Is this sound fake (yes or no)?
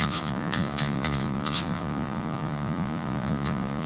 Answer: yes